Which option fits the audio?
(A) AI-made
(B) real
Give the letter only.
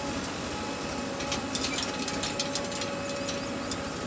B